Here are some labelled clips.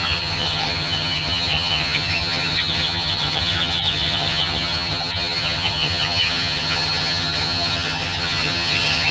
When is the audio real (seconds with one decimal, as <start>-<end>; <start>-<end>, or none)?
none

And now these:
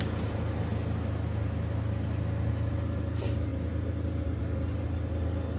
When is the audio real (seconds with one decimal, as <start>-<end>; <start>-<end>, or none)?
0.0-5.6

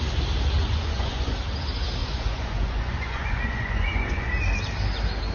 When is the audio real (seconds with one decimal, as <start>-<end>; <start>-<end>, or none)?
0.0-0.6; 1.3-2.0; 4.3-5.3

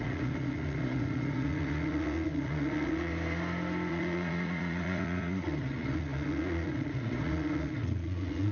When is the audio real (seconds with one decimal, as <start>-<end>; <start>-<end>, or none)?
3.1-3.9

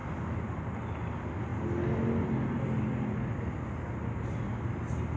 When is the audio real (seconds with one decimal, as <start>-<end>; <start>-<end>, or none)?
0.7-5.2

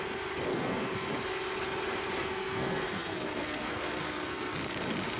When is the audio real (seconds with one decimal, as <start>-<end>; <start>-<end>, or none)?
0.0-0.5; 1.1-2.2; 4.6-5.2

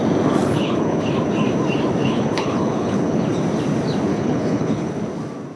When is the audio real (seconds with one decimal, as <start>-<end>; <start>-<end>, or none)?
0.0-0.4; 1.1-2.0; 3.2-4.1; 4.9-5.6

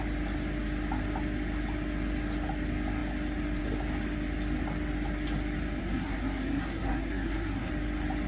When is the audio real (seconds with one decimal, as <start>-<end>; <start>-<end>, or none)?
0.0-5.8; 7.7-8.3